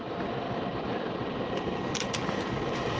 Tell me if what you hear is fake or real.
real